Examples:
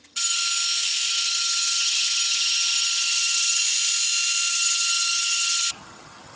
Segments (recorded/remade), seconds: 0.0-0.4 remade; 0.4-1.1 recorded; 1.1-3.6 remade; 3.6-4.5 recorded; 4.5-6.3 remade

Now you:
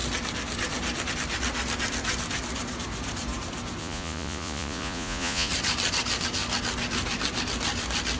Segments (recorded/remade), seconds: 0.0-3.8 recorded; 3.8-5.5 remade; 5.5-8.2 recorded

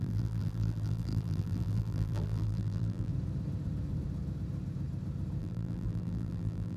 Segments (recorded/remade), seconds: 0.0-3.1 remade; 3.1-5.4 recorded; 5.4-6.8 remade

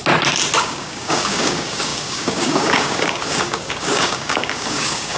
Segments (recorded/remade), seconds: 0.0-0.6 recorded; 0.6-5.2 remade

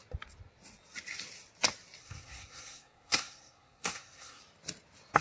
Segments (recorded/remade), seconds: 0.0-2.0 recorded; 2.0-4.4 remade; 4.4-5.2 recorded

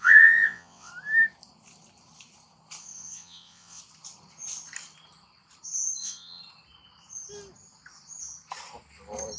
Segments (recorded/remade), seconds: 0.0-0.9 remade; 0.9-2.8 recorded; 2.8-3.8 remade; 3.8-6.0 recorded; 6.0-6.4 remade; 6.4-9.4 recorded

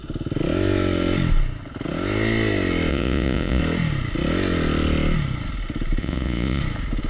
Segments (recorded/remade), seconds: 0.0-2.9 recorded; 2.9-3.6 remade; 3.6-6.0 recorded; 6.0-6.6 remade; 6.6-7.1 recorded

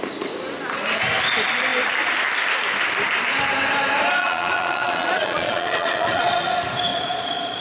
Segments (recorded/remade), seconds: 0.0-4.2 recorded; 4.2-6.5 remade; 6.5-6.9 recorded; 6.9-7.6 remade